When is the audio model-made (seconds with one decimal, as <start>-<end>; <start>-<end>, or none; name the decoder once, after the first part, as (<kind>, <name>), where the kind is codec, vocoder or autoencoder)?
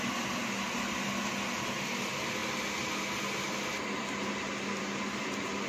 none